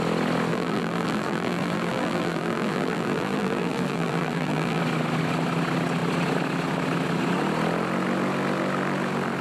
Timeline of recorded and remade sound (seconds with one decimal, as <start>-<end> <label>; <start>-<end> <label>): 0.0-0.5 recorded; 0.5-4.8 remade; 4.8-9.4 recorded